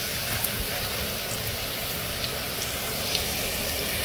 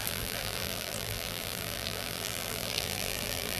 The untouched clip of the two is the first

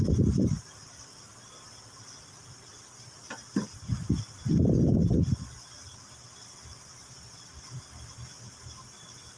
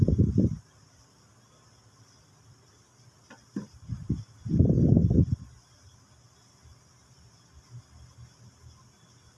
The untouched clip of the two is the second